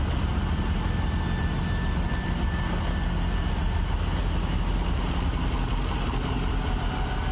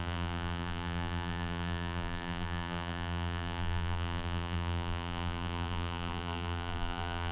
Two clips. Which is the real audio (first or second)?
first